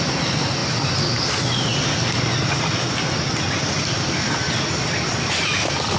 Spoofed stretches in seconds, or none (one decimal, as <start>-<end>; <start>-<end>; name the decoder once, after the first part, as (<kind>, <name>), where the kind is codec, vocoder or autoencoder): none